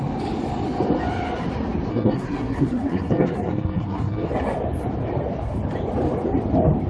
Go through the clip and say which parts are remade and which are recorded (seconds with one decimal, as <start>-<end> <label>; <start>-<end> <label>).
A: 0.0-1.9 recorded; 1.9-4.3 remade; 4.3-6.9 recorded